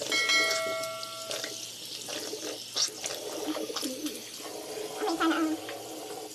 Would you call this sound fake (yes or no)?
no